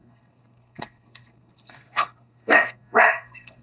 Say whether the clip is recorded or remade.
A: remade